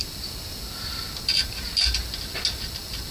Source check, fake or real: real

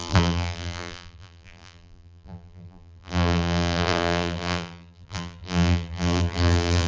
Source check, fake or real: fake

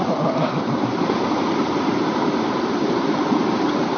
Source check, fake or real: fake